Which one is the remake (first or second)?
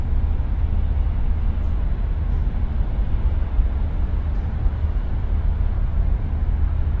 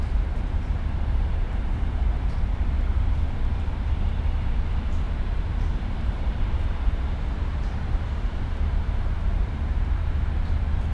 second